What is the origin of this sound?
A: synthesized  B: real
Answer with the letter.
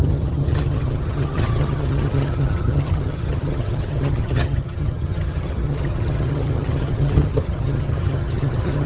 A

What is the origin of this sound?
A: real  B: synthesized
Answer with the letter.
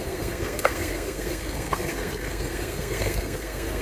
B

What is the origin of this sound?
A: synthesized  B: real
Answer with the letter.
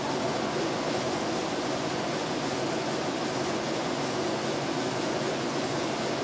A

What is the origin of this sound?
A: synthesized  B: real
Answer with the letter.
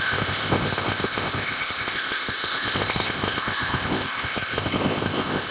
A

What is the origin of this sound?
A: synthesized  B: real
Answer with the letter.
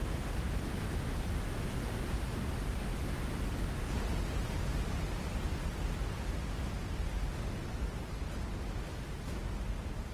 B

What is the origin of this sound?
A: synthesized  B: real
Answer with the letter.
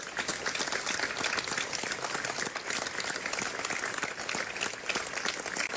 B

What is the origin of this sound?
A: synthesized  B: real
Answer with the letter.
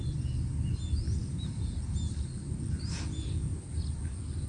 B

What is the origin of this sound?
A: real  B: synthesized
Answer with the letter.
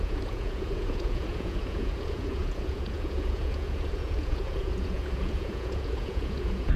B